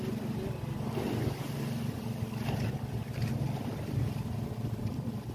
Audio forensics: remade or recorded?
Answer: recorded